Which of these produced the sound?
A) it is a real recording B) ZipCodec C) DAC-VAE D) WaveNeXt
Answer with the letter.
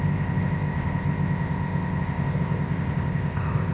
B